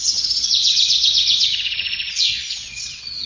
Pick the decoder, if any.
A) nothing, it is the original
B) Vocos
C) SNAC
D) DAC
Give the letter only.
B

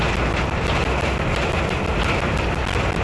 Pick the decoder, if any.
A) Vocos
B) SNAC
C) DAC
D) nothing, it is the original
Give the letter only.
D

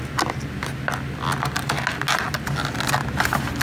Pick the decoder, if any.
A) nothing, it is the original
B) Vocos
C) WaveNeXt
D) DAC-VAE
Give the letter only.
A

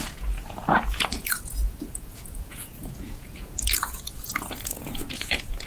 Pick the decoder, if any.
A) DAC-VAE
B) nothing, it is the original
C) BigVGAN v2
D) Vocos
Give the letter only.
D